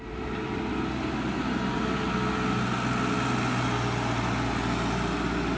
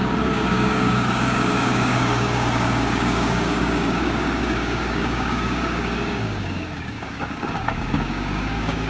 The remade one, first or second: second